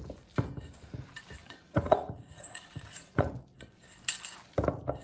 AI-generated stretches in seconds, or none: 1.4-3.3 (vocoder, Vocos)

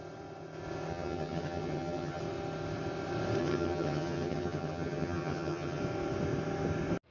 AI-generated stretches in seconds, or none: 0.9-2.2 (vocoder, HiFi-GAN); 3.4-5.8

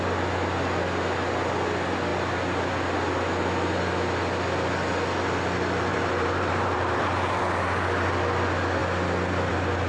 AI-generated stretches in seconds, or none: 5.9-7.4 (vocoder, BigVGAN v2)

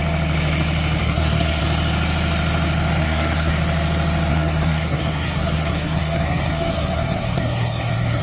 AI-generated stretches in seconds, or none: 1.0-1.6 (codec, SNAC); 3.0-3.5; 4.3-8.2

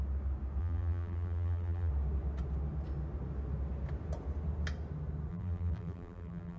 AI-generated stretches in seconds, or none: 0.6-1.9 (vocoder, BigVGAN v2); 5.3-6.6